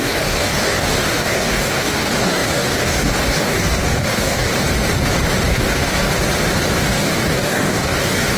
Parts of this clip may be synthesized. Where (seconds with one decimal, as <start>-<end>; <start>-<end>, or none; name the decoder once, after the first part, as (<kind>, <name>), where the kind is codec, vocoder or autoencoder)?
0.0-4.5 (codec, DAC); 5.4-6.1; 6.8-8.4